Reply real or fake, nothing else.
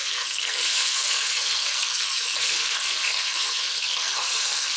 fake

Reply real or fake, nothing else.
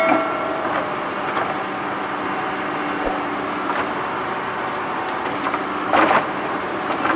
real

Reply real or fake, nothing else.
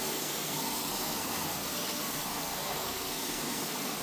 fake